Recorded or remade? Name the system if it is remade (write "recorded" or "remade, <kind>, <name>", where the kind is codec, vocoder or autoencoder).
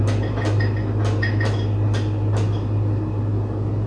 recorded